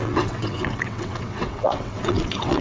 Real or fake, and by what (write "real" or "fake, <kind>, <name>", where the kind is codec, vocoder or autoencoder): fake, vocoder, WaveNeXt